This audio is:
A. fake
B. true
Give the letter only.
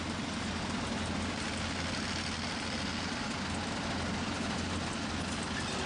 B